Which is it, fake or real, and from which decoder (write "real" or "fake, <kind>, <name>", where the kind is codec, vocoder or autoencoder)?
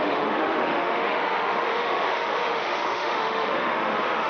fake, autoencoder, DAC-VAE